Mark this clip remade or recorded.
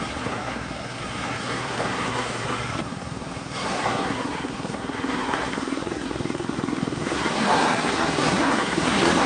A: remade